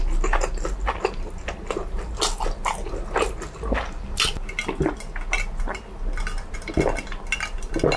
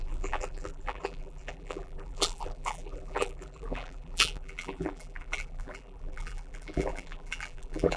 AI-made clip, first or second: second